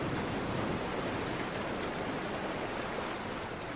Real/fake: real